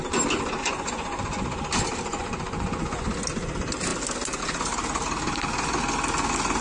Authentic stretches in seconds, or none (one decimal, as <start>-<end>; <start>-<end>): 0.0-0.7; 1.6-2.1; 3.1-6.6